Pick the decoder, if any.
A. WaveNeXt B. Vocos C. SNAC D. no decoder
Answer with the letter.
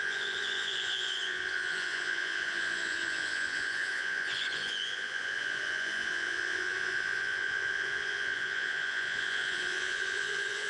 B